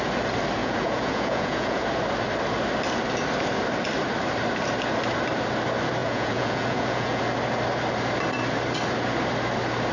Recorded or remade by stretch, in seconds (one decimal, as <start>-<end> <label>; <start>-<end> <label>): 0.0-0.6 recorded; 0.6-1.8 remade; 1.8-6.0 recorded; 6.0-7.2 remade; 7.2-9.9 recorded